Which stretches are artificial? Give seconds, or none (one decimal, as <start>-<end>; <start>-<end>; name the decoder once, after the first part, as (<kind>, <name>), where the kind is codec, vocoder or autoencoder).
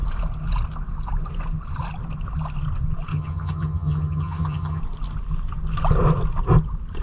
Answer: 3.1-4.8 (vocoder, HiFi-GAN)